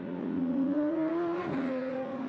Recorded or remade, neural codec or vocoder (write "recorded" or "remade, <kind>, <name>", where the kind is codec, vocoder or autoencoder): remade, vocoder, Vocos